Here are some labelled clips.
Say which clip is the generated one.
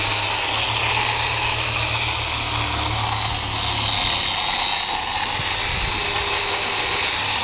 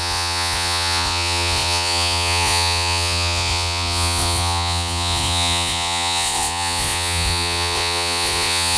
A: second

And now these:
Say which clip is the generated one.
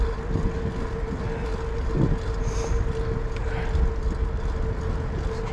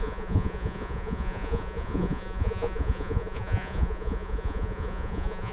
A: second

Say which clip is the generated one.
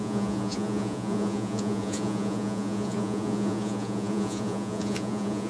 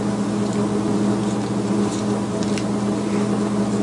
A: first